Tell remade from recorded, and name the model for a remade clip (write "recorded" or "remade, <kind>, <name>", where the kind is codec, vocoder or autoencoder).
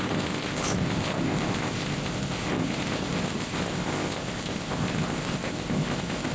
remade, codec, ZipCodec